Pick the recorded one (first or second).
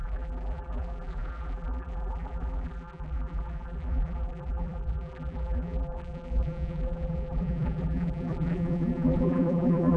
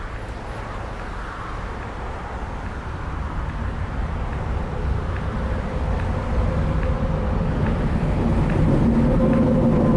second